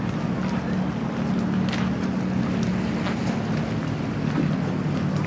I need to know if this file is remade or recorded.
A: recorded